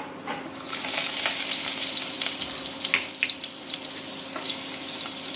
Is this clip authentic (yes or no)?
no